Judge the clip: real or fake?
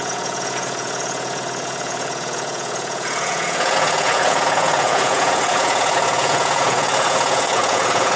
fake